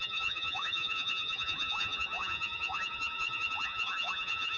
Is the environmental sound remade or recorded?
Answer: remade